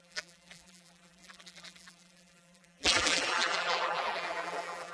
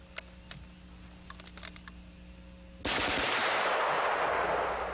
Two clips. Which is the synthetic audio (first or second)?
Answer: first